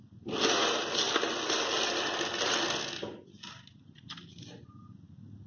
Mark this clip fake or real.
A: real